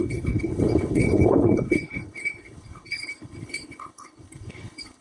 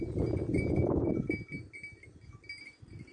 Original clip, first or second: second